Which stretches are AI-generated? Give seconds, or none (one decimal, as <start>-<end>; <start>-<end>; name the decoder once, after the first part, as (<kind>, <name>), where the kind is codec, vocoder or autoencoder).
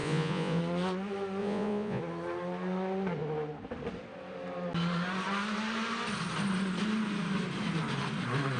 0.0-0.6 (vocoder, Vocos); 1.4-2.0